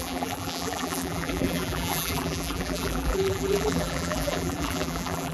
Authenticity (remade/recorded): remade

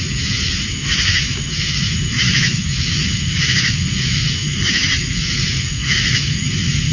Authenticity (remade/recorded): remade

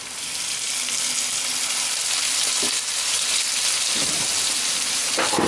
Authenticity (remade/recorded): recorded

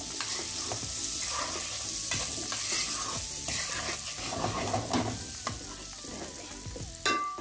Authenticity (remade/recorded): recorded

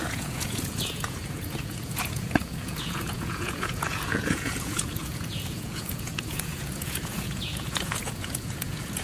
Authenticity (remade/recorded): remade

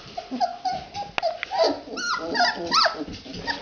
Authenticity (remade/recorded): recorded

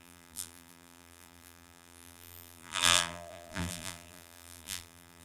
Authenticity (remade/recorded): remade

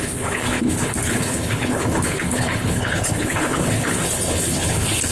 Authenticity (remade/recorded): remade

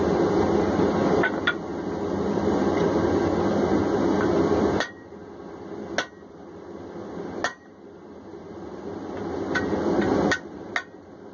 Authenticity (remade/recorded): recorded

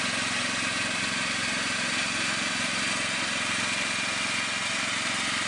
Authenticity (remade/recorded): recorded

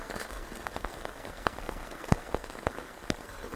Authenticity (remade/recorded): remade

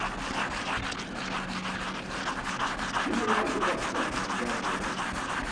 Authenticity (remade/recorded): recorded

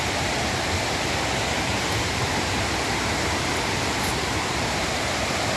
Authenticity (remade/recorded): recorded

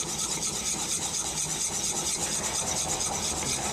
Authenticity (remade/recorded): recorded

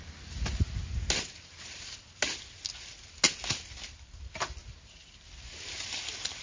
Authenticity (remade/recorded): recorded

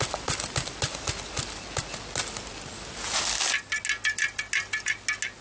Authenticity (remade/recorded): recorded